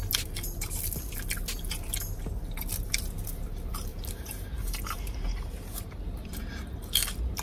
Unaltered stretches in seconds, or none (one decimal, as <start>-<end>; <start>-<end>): 0.0-3.9; 6.3-7.4